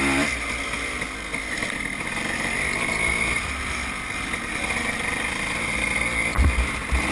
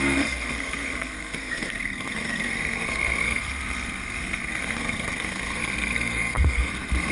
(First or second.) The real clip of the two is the first